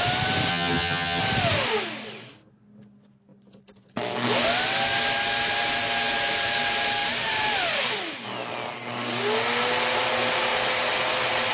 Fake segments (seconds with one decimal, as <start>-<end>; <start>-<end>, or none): 0.5-1.2